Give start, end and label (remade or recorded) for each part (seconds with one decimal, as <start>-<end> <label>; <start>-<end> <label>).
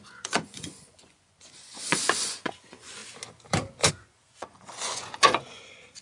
0.0-3.0 remade; 3.0-3.9 recorded; 3.9-6.0 remade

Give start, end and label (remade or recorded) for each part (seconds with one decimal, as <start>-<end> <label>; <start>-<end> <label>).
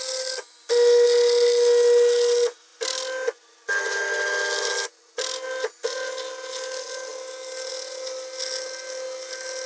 0.0-9.7 recorded